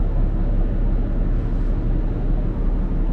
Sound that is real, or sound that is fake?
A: real